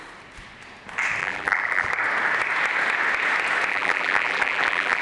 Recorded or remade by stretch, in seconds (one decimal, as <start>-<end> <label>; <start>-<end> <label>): 0.0-1.2 recorded; 1.2-1.9 remade; 1.9-3.7 recorded; 3.7-5.0 remade